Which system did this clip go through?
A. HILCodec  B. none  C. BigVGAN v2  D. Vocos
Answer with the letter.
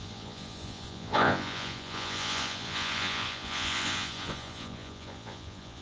D